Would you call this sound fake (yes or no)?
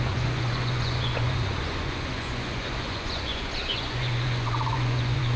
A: yes